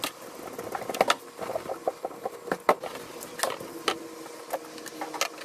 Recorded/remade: recorded